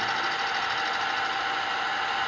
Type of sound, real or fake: real